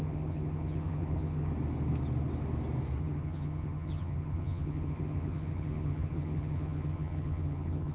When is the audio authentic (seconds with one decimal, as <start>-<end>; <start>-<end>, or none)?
1.5-3.0